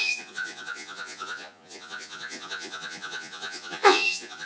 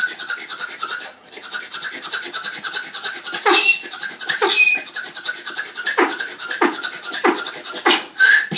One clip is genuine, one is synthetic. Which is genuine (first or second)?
second